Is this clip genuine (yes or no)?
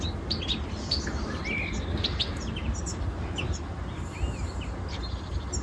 yes